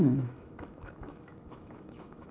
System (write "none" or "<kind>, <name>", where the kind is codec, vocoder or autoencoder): autoencoder, DAC-VAE